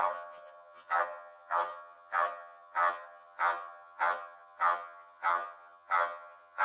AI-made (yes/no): yes